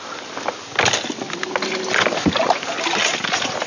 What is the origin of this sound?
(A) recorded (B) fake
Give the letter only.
A